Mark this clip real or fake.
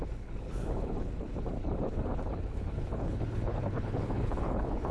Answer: fake